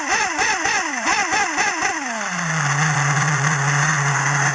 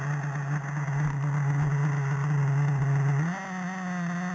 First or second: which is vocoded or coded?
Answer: first